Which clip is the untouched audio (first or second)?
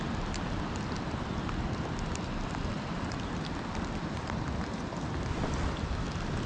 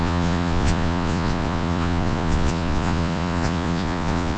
first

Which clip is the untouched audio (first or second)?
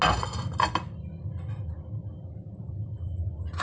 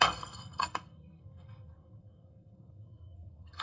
first